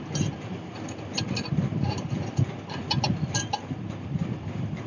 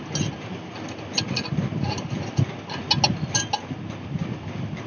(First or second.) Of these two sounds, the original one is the second